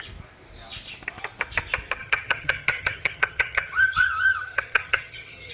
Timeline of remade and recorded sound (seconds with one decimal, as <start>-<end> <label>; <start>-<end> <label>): 0.0-2.0 recorded; 2.0-5.5 remade